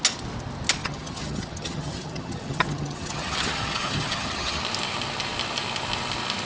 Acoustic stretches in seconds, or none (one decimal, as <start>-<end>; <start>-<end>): 0.0-0.8; 4.6-6.4